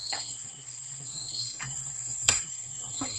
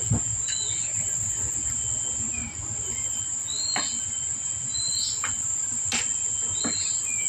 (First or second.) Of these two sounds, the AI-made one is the first